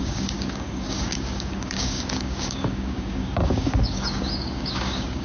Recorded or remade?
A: remade